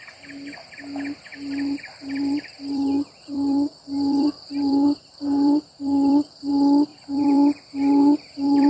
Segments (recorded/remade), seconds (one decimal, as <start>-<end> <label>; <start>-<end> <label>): 0.0-1.3 recorded; 1.3-6.5 remade; 6.5-6.9 recorded; 6.9-8.7 remade